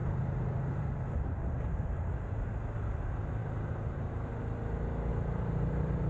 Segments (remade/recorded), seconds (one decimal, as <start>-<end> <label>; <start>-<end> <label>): 0.0-0.9 remade; 0.9-3.4 recorded; 3.4-4.3 remade; 4.3-5.1 recorded; 5.1-6.1 remade